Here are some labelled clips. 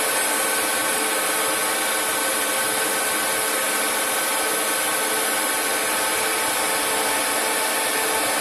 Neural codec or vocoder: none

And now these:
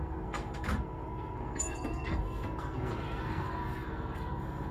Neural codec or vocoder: codec, SNAC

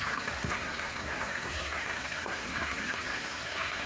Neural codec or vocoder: codec, SNAC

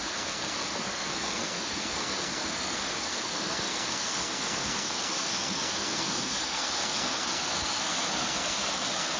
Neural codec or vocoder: codec, SNAC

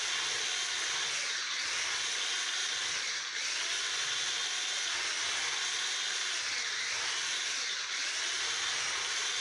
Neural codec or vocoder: none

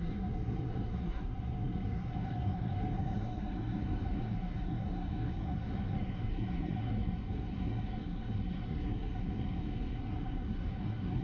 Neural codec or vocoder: codec, SNAC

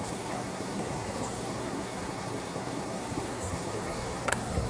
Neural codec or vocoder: codec, SNAC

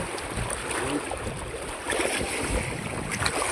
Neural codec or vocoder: none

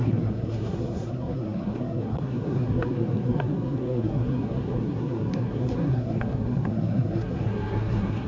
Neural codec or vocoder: codec, SNAC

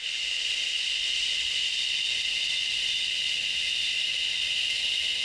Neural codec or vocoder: none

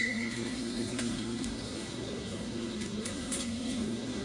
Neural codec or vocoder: codec, SNAC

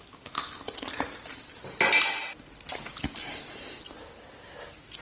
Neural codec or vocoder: none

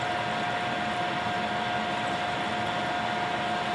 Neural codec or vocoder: none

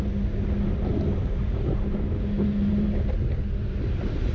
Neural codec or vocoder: none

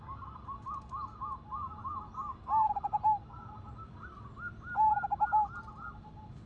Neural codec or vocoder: none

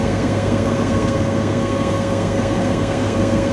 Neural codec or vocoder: codec, SNAC